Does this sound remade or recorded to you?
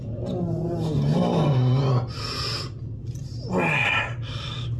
recorded